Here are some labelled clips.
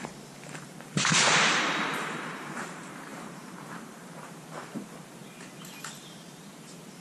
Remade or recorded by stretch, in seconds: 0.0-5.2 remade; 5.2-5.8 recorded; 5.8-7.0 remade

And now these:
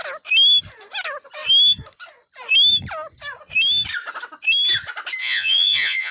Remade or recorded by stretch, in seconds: 0.0-5.2 recorded; 5.2-6.1 remade

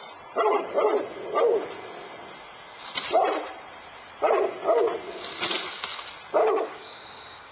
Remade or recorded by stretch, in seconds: 0.0-6.4 recorded; 6.4-7.5 remade

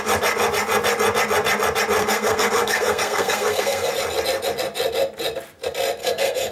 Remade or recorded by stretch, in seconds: 0.0-2.0 recorded; 2.0-3.9 remade; 3.9-6.0 recorded; 6.0-6.5 remade

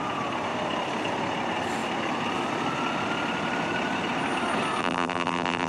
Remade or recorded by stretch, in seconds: 0.0-4.8 recorded; 4.8-5.7 remade

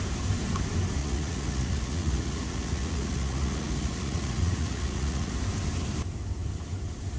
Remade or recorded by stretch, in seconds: 0.0-1.0 recorded; 1.0-5.3 remade; 5.3-7.2 recorded

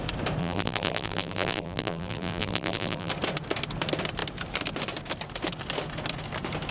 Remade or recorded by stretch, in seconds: 0.0-0.4 recorded; 0.4-3.1 remade; 3.1-6.7 recorded

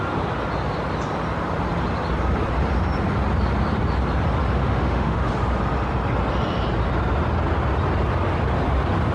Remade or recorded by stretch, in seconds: 0.0-4.6 recorded; 4.6-5.3 remade; 5.3-9.1 recorded